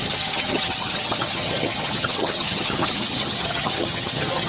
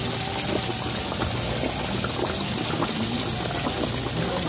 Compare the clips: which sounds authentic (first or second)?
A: second